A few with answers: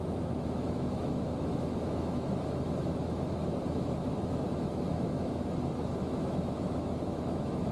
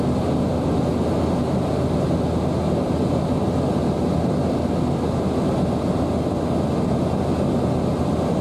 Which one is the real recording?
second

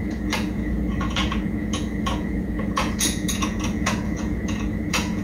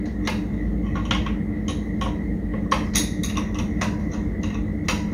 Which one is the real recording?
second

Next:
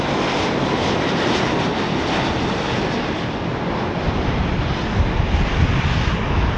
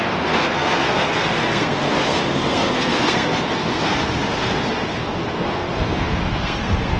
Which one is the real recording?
first